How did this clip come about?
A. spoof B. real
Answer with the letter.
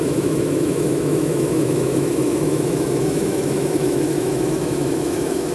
A